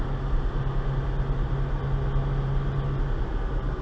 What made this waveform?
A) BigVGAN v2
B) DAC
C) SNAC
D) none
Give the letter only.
D